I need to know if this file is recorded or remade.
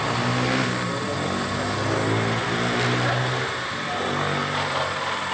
recorded